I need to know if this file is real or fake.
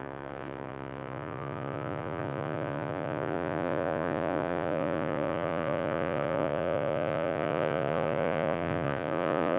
fake